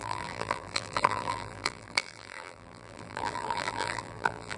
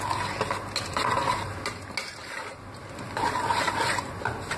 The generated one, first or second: first